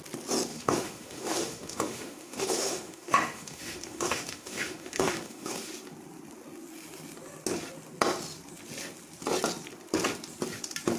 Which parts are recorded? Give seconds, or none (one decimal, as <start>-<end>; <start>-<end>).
0.0-0.5; 5.7-11.0